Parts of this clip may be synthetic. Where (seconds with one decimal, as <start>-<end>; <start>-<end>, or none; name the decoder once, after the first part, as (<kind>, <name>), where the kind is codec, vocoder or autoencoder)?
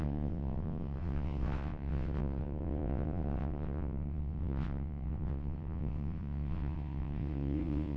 0.0-8.0 (vocoder, WaveNeXt)